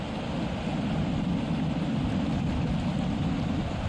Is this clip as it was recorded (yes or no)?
yes